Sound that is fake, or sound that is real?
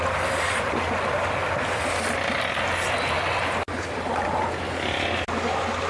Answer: real